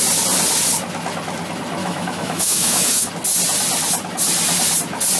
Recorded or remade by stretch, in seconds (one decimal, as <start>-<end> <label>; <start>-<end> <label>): 0.0-1.8 recorded; 1.8-3.1 remade; 3.1-5.2 recorded